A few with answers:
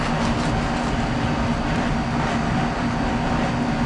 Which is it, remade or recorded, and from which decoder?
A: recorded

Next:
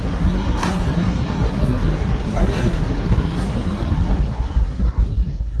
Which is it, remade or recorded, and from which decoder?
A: remade, codec, SNAC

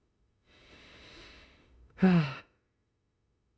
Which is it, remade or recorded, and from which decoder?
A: remade, autoencoder, DAC-VAE